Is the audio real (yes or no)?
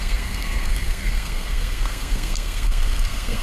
no